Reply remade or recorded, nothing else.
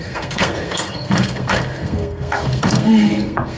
remade